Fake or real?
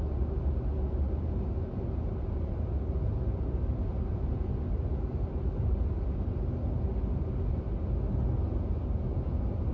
real